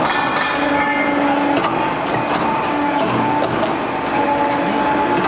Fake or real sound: real